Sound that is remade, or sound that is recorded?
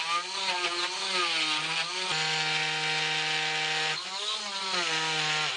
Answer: recorded